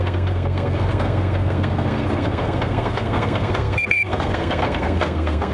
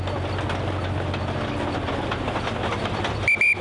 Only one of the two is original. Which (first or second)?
second